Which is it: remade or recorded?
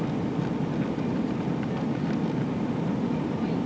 recorded